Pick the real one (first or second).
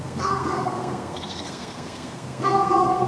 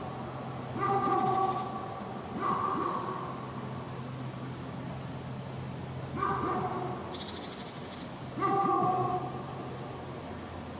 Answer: second